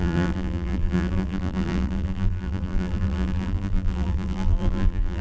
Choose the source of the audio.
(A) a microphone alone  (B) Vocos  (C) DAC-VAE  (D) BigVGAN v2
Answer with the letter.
D